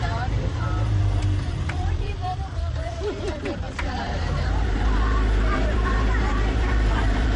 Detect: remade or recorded remade